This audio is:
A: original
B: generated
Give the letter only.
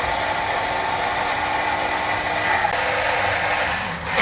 A